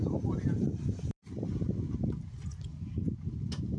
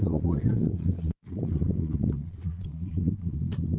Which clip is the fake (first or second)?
second